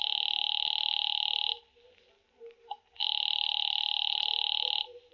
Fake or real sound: real